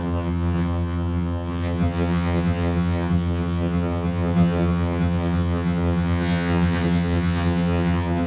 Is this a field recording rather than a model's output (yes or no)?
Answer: no